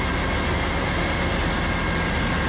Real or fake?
real